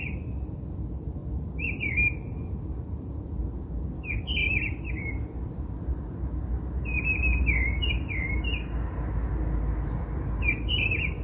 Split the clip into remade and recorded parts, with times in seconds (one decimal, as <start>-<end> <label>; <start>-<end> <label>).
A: 0.0-11.2 recorded